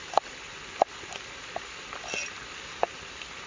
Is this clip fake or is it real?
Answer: real